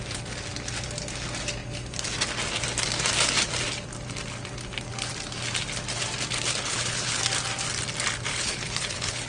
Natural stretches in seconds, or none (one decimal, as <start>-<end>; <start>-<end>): 0.0-6.7; 7.2-8.3